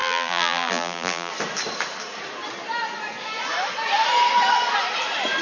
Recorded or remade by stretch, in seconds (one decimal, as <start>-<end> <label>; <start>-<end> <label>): 0.0-1.3 remade; 1.3-5.4 recorded